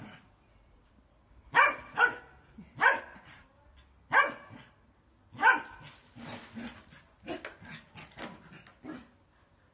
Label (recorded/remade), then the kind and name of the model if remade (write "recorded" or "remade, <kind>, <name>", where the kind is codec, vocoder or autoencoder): recorded